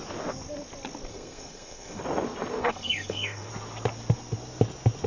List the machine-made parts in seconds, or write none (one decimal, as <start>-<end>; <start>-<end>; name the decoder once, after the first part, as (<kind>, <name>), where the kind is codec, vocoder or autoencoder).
1.1-2.0 (codec, SNAC); 2.6-3.5